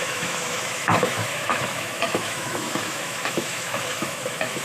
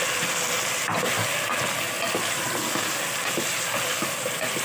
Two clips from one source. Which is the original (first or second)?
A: second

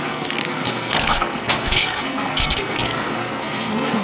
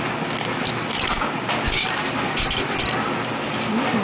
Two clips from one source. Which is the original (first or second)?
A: second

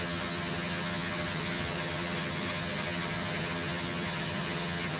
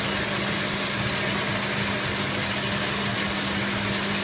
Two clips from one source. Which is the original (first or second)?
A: second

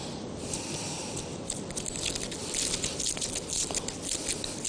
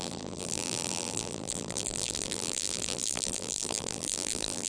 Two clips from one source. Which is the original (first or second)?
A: first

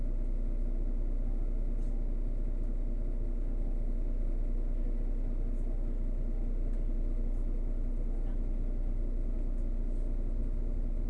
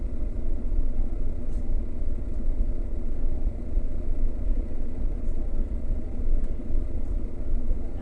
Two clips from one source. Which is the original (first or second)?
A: first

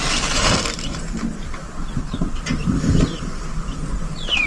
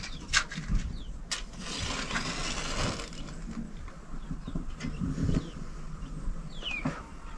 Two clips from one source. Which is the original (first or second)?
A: second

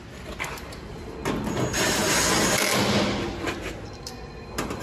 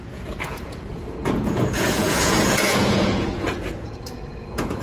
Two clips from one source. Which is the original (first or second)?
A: first